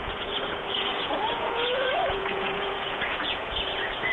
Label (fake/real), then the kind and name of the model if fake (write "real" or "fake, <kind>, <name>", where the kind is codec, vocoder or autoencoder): fake, vocoder, Vocos